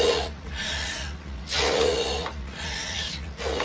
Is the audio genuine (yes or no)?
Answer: no